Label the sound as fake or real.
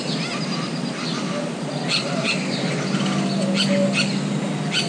real